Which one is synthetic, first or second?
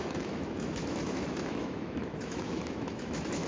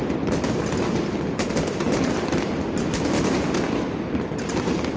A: first